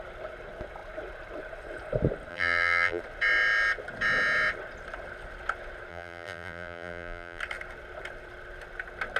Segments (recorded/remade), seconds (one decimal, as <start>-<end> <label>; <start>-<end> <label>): 0.0-2.3 recorded; 2.3-3.0 remade; 3.0-5.9 recorded; 5.9-7.4 remade; 7.4-9.2 recorded